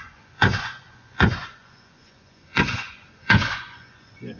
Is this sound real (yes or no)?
no